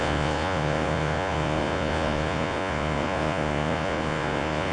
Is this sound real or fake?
fake